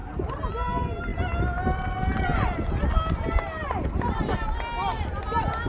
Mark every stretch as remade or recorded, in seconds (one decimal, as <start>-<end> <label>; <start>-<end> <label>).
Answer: 0.0-5.7 recorded